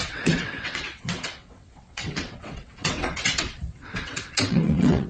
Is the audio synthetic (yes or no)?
yes